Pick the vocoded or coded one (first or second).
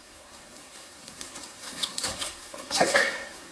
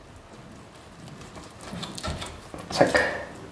first